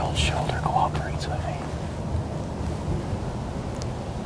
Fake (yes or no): no